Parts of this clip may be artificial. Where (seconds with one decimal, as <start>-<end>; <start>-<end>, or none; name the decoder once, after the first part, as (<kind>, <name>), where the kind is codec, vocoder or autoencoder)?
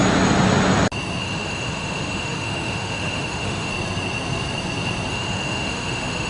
1.2-3.7 (autoencoder, DAC-VAE); 5.1-6.3